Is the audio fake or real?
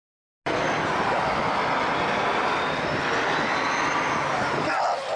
real